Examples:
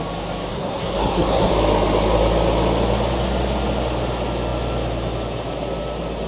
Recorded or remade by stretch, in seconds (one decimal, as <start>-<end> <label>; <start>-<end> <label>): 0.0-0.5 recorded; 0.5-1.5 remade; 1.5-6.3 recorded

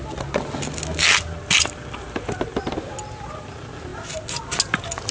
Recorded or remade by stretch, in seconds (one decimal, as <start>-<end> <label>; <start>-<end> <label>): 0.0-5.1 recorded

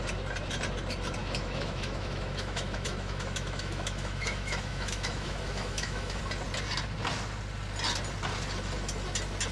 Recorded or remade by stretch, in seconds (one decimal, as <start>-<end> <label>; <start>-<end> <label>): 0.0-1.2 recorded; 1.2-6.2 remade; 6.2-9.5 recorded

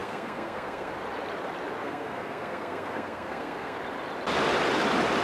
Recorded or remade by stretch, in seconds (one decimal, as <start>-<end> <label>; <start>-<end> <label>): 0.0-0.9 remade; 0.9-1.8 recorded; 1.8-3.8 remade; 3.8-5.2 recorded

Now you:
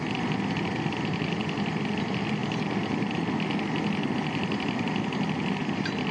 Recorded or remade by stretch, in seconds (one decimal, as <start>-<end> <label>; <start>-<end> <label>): 0.0-6.1 recorded

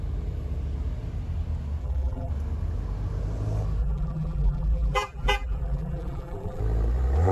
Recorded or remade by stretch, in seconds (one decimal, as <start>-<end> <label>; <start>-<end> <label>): 0.0-1.8 recorded; 1.8-2.3 remade; 2.3-3.8 recorded; 3.8-6.6 remade; 6.6-7.3 recorded